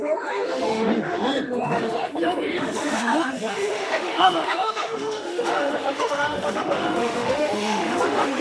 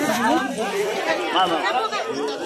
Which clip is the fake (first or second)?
first